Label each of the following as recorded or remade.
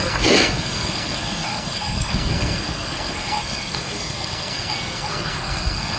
remade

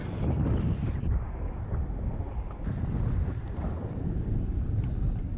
recorded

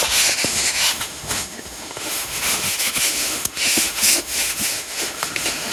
remade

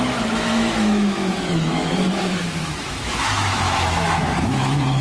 remade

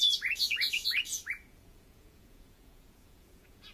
remade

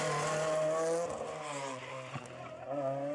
recorded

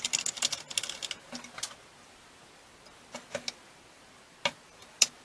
recorded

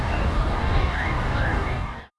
remade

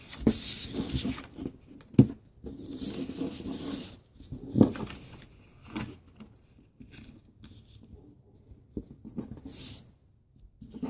recorded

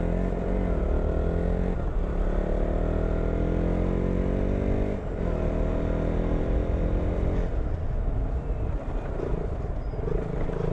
recorded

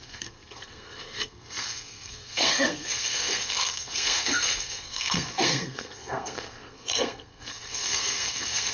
remade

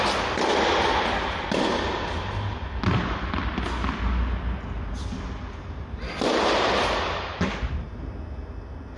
recorded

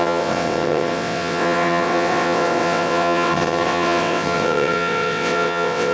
remade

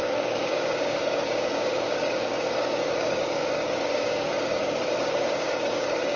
remade